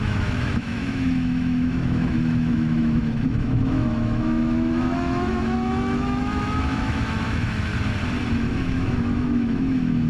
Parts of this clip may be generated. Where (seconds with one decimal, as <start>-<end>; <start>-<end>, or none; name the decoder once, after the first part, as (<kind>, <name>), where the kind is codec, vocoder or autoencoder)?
0.0-7.7 (autoencoder, DAC-VAE); 8.3-10.1